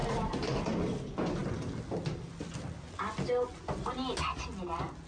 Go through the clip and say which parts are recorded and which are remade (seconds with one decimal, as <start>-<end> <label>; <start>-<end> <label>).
0.0-5.1 recorded